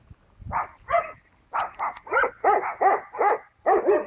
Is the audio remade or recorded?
recorded